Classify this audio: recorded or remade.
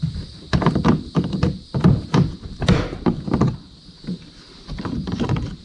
remade